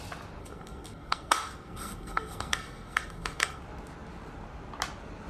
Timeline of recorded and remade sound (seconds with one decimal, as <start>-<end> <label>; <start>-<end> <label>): 0.0-0.4 recorded; 0.4-3.6 remade; 3.6-5.3 recorded